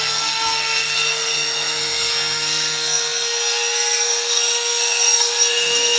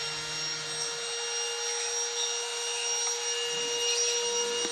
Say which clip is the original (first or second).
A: second